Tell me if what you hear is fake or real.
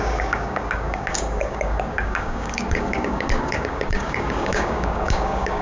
fake